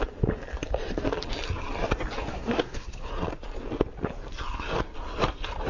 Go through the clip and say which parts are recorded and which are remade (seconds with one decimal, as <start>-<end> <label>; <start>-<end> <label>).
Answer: 0.0-2.3 recorded; 2.3-3.1 remade; 3.1-5.7 recorded